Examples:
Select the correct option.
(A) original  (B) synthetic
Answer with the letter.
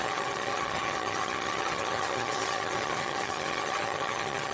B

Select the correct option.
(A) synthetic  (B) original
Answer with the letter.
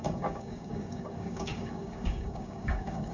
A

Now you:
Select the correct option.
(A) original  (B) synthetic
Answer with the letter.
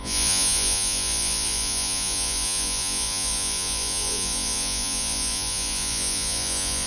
B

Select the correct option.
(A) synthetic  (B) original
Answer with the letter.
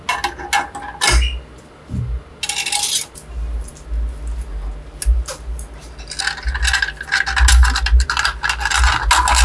B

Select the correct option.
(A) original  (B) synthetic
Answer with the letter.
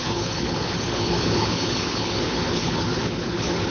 B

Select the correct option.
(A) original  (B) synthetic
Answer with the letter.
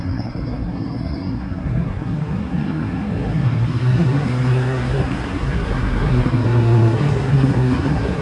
B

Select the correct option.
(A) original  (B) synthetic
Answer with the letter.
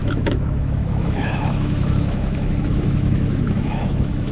B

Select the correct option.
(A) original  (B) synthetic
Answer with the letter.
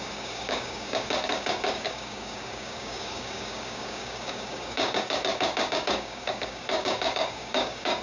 B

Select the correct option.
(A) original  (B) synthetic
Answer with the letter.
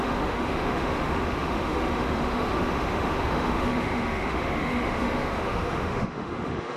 B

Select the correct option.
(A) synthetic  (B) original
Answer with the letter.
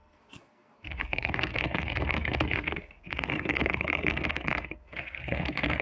A